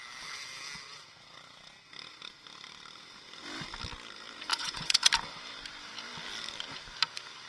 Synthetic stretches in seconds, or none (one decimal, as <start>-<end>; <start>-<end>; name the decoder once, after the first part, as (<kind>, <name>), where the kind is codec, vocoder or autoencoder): 4.5-5.1 (vocoder, Vocos)

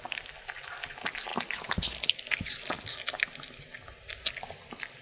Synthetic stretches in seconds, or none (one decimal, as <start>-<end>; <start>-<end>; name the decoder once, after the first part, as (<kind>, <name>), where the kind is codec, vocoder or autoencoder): none

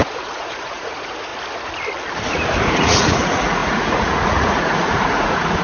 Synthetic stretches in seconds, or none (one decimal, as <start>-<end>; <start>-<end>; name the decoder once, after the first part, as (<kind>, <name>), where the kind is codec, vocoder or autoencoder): 0.0-1.3 (vocoder, Vocos); 2.6-5.6

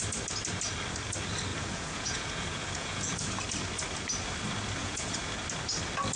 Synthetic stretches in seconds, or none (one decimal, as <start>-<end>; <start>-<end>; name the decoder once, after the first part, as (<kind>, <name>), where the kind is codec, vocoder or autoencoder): 1.5-3.3 (vocoder, Vocos); 4.8-5.3

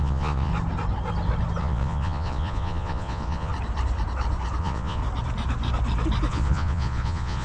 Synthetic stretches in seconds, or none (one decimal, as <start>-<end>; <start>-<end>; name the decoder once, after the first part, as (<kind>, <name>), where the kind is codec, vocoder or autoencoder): 0.0-0.5 (vocoder, Vocos); 1.6-3.5; 4.6-5.0; 6.3-7.4

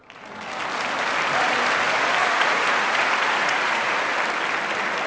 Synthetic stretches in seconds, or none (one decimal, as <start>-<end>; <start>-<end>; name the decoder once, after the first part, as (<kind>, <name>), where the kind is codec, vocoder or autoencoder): 2.2-4.0 (vocoder, Vocos)

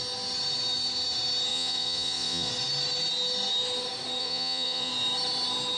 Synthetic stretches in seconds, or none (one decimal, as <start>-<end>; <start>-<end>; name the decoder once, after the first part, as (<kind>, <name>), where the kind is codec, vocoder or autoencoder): 1.5-2.5 (vocoder, Vocos); 4.2-4.9

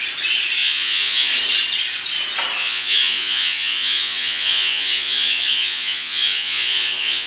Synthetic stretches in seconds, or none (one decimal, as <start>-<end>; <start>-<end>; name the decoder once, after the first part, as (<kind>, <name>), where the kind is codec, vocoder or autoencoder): 0.6-1.3 (vocoder, Vocos); 2.6-7.3